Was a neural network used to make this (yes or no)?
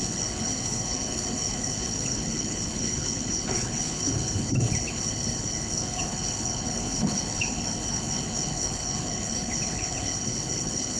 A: yes